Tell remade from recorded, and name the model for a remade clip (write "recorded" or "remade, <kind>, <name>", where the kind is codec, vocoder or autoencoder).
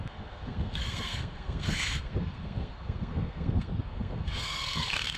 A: remade, codec, SNAC